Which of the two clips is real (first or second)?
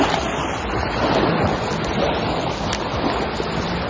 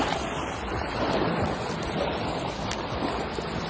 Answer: first